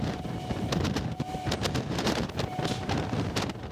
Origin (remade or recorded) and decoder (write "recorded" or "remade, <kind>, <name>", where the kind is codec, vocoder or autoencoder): remade, vocoder, BigVGAN v2